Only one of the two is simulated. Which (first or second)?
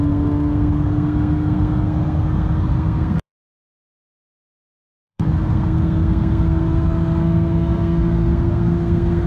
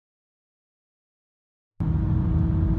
first